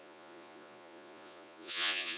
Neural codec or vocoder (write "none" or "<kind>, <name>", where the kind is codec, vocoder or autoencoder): vocoder, Vocos